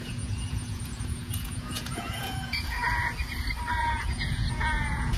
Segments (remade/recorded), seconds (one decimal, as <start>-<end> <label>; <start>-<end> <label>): 0.0-2.8 remade; 2.8-3.8 recorded; 3.8-5.2 remade